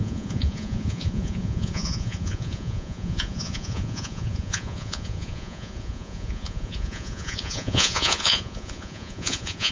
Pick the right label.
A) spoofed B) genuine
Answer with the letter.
A